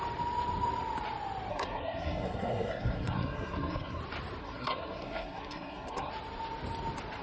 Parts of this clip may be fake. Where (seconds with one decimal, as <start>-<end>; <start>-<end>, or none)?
1.5-4.0; 4.4-6.1